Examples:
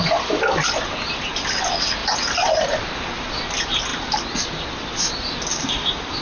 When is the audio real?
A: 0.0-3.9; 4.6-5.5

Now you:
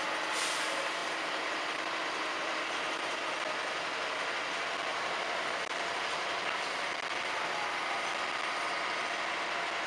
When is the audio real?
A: 0.0-1.0; 3.2-4.9; 5.4-9.9